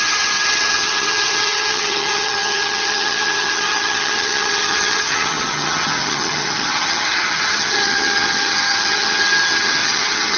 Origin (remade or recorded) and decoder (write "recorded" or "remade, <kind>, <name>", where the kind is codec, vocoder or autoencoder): remade, vocoder, HiFi-GAN